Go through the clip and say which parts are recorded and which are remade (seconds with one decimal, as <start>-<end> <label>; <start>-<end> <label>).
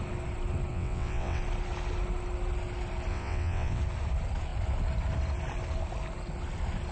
0.0-0.7 recorded; 0.7-1.4 remade; 1.4-3.1 recorded; 3.1-3.8 remade; 3.8-6.9 recorded